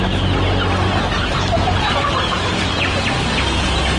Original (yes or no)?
yes